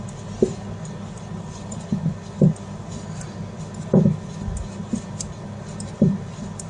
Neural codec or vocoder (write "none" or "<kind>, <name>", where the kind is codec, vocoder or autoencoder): none